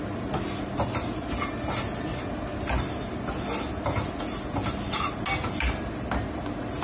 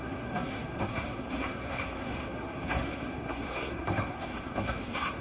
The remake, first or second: second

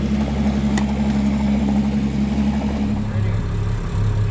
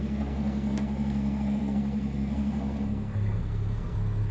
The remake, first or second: second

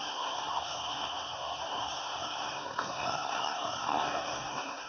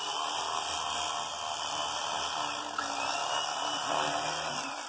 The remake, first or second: first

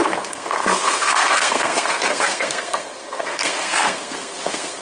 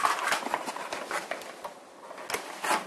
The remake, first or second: first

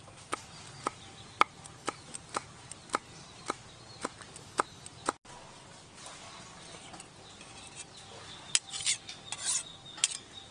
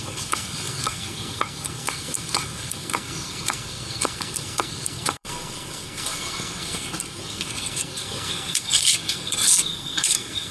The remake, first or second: second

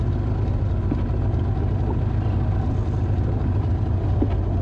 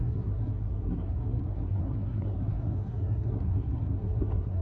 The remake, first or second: second